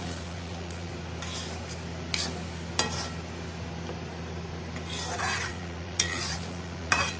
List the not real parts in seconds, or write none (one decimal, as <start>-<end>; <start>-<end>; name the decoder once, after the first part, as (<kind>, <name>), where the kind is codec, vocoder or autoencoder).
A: 0.0-0.9 (vocoder, Vocos); 5.2-7.2